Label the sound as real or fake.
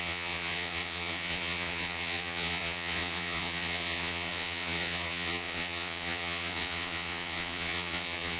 fake